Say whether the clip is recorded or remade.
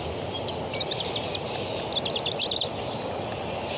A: recorded